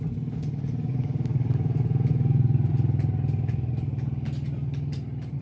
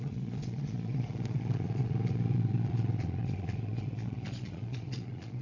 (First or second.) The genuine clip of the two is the first